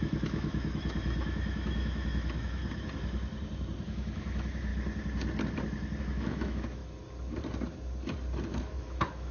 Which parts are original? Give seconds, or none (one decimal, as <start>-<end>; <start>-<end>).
2.6-3.8; 4.7-6.0; 6.8-8.6